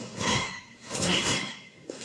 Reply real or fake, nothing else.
fake